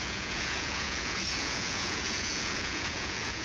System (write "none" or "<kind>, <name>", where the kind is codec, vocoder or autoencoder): vocoder, Vocos